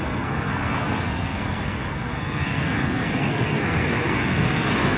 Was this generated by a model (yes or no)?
yes